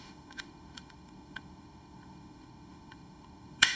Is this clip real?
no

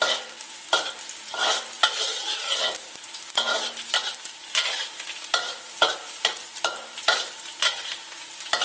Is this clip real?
yes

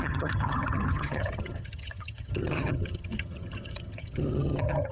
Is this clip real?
no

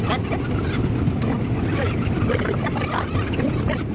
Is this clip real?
yes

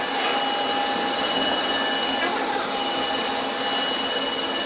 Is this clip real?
yes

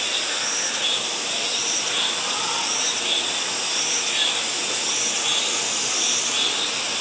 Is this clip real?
yes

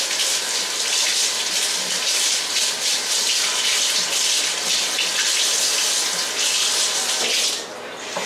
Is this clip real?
yes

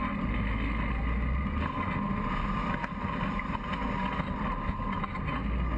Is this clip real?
yes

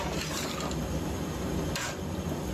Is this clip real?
yes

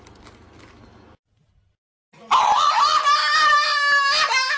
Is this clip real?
yes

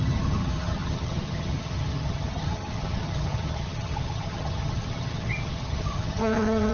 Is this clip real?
no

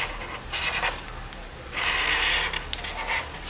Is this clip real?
yes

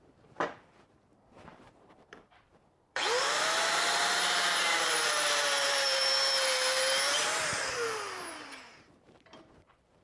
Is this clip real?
no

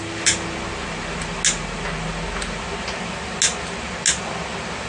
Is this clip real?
yes